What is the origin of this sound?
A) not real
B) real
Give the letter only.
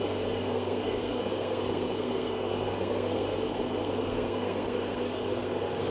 A